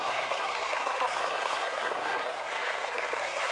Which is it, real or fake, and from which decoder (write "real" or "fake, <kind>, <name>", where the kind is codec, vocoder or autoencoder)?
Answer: fake, codec, SNAC